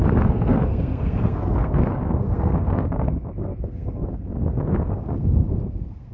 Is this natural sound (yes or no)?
no